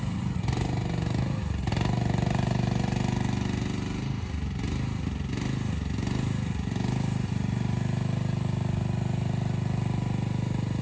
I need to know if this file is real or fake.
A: real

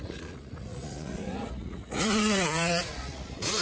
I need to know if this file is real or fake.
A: fake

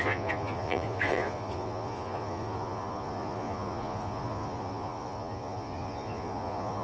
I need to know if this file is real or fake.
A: fake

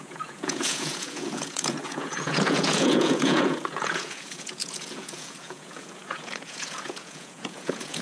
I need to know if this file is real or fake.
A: fake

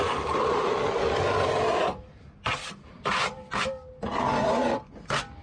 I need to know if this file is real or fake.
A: real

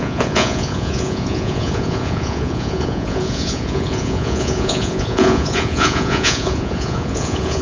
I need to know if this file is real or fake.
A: fake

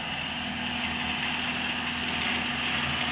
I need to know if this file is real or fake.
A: real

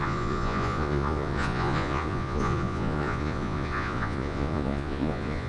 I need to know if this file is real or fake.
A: fake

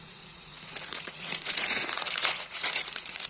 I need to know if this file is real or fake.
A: fake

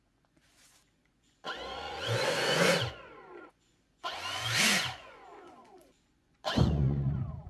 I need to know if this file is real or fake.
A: fake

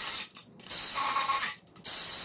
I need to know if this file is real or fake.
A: real